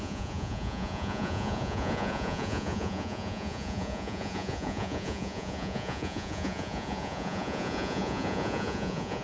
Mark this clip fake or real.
fake